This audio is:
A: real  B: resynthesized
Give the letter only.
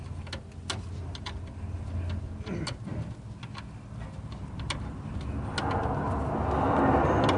A